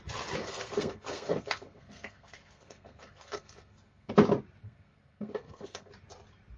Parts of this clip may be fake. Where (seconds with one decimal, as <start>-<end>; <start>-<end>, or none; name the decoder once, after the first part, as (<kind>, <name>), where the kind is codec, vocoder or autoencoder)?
0.4-4.1 (codec, SNAC); 4.6-5.9